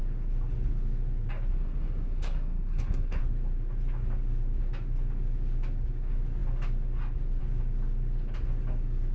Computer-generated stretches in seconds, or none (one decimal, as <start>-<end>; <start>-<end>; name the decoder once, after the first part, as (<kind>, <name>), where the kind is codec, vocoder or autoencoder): 1.5-3.2 (codec, SNAC)